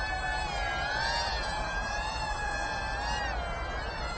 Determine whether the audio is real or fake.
real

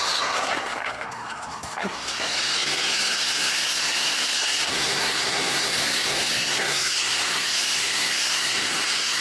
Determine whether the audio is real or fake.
fake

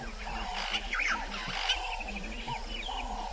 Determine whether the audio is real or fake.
real